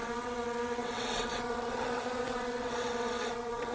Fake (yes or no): yes